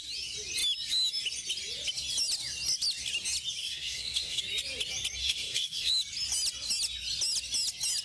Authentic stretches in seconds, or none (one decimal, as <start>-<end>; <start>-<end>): 0.0-3.6; 4.4-5.2; 5.9-8.0